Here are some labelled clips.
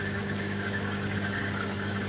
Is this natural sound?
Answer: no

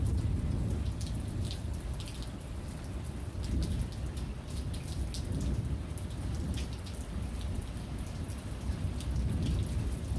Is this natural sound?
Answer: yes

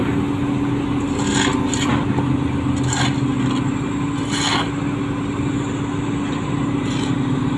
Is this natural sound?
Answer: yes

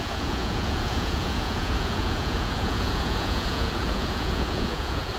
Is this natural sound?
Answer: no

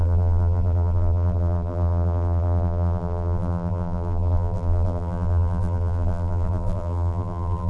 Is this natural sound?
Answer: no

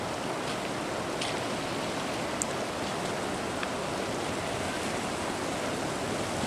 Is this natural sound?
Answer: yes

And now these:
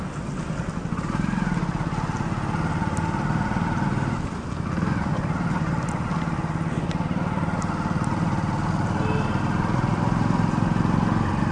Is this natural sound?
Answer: yes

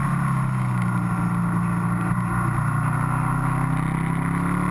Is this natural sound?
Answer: yes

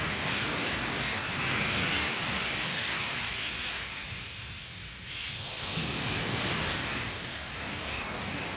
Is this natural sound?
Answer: no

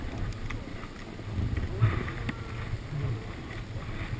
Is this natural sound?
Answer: yes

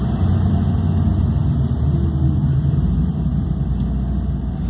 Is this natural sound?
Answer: yes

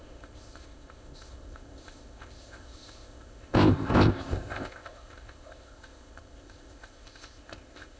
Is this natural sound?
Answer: no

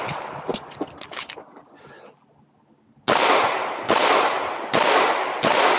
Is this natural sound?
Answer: yes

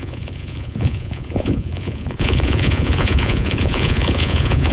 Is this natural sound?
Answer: no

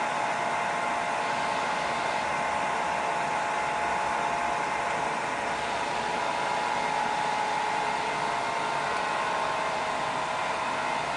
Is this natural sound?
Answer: yes